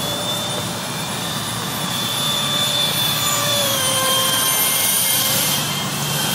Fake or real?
fake